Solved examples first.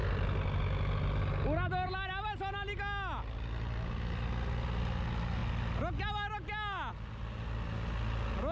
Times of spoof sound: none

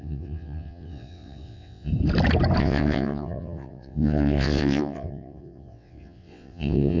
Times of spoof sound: 0.0-1.9; 2.6-7.0

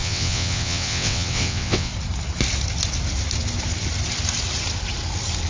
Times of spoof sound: 0.0-1.9

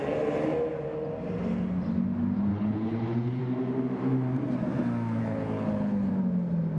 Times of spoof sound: 2.5-3.4; 5.2-6.1